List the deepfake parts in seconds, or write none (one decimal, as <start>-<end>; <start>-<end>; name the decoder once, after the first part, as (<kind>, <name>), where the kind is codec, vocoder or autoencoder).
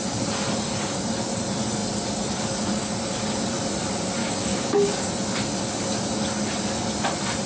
4.2-5.1 (codec, DAC)